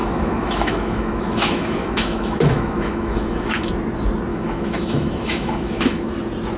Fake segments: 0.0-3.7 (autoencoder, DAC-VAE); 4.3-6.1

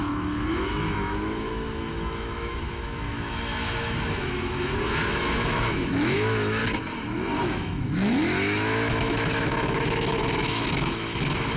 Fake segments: 0.0-6.6 (autoencoder, DAC-VAE); 7.4-11.6

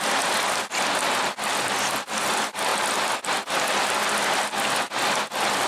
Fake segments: none

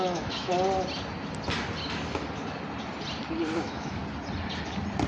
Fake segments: 0.0-0.5 (autoencoder, DAC-VAE); 3.6-4.0

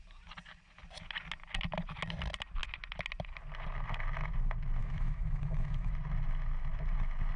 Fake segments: 4.8-5.9 (autoencoder, DAC-VAE)

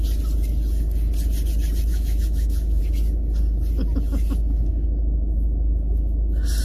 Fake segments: 1.9-2.8 (autoencoder, DAC-VAE)